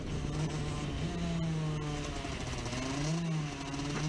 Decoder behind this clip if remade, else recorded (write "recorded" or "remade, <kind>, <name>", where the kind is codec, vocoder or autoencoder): recorded